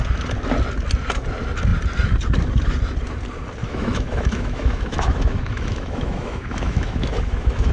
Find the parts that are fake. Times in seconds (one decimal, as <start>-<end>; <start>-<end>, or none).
3.6-7.7